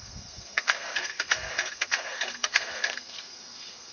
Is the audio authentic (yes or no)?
no